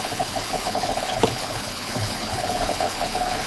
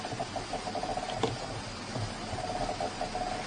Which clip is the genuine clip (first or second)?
second